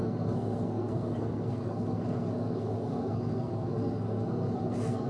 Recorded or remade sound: remade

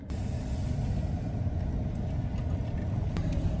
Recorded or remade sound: recorded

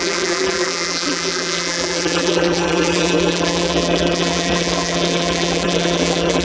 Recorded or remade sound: remade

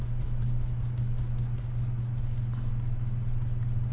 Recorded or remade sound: recorded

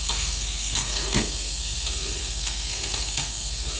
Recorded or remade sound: remade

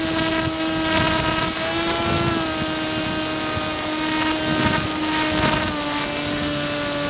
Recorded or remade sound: recorded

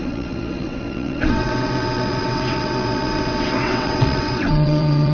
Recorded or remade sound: remade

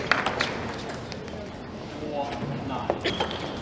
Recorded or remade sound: recorded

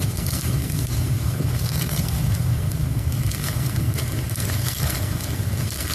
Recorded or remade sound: remade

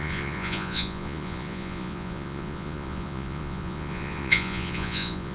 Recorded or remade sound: remade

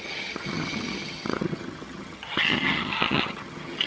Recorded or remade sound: remade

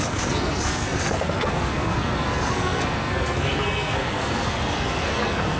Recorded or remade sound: remade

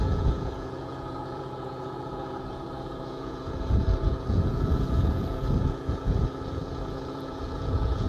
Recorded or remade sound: remade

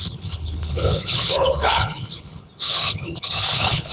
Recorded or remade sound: remade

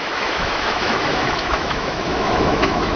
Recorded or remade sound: remade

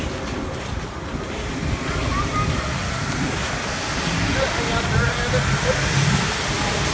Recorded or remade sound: recorded